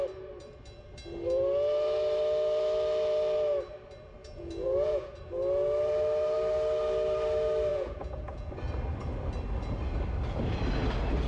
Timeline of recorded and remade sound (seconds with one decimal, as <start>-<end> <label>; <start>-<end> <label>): 0.0-4.2 recorded; 4.2-5.2 remade; 5.2-7.7 recorded; 7.7-8.5 remade; 8.5-11.3 recorded